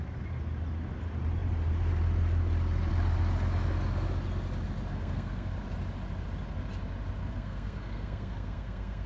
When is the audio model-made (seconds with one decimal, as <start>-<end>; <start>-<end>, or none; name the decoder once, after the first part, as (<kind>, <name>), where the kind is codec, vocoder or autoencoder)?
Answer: 4.9-5.5 (codec, SNAC); 7.2-9.1